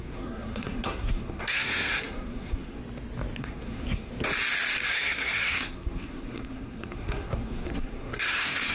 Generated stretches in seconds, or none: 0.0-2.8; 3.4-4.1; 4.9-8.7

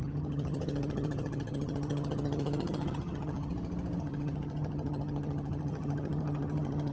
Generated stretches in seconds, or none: 0.0-3.5; 4.0-6.9

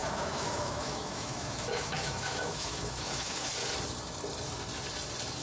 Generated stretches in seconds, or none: 0.0-3.5

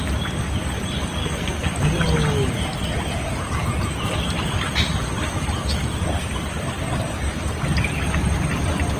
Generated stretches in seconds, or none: 1.2-1.7

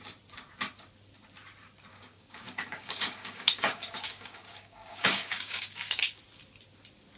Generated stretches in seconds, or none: 1.9-6.2

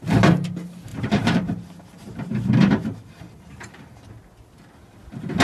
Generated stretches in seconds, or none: 0.9-4.1